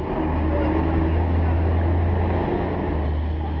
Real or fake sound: real